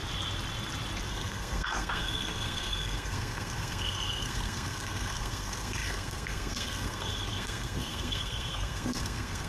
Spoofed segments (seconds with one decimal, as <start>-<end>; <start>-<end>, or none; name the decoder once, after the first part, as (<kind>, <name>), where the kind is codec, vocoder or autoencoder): 1.1-9.5 (codec, SNAC)